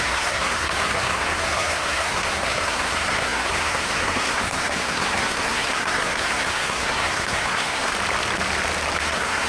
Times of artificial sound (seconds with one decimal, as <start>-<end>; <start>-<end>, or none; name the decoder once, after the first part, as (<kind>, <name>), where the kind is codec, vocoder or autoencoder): 0.0-7.9 (codec, SNAC); 9.0-9.5